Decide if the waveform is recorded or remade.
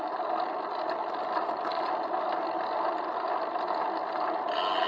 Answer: recorded